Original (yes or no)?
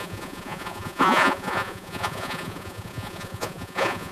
no